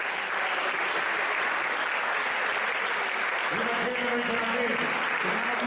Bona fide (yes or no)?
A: yes